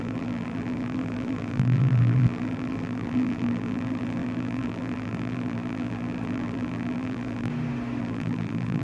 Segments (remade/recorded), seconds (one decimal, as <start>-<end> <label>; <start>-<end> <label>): 0.0-7.5 remade; 7.5-8.0 recorded; 8.0-8.8 remade